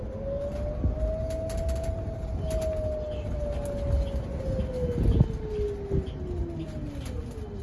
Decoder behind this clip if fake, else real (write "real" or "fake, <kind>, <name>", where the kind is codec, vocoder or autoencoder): real